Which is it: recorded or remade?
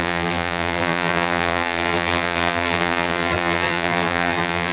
remade